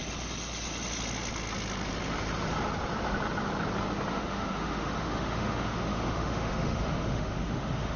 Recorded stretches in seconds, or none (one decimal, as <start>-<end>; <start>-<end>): 0.0-4.1